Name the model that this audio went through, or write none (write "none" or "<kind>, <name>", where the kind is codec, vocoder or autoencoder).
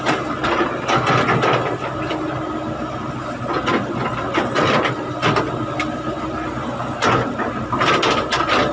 none